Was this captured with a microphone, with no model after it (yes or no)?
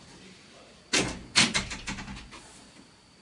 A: yes